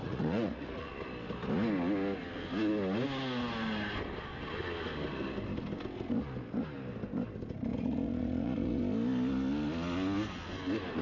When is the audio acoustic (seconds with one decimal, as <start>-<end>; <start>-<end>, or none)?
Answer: 0.9-7.7; 8.8-11.0